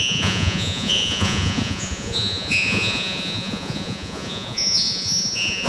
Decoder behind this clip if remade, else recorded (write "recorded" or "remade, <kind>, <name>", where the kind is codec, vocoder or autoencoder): remade, vocoder, Vocos